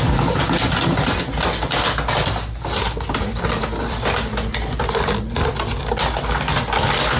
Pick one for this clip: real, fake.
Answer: real